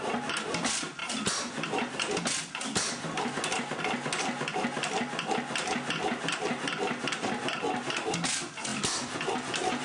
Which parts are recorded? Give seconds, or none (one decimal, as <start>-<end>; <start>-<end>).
0.0-9.8